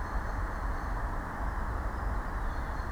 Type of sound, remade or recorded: recorded